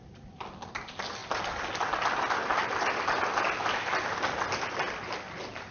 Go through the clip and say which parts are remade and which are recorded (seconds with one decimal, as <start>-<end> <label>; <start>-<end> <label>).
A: 0.0-5.7 recorded